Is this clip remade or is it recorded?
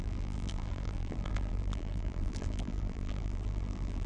remade